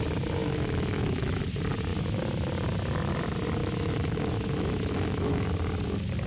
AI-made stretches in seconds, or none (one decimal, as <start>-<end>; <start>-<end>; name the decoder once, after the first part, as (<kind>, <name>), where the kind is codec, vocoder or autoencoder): 0.4-1.4 (autoencoder, DAC-VAE); 3.6-5.5